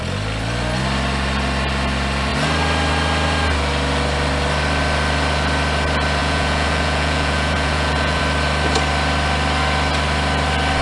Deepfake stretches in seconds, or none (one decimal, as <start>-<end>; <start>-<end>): 6.2-8.2